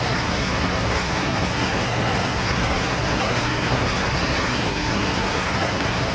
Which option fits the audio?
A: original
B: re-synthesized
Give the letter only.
B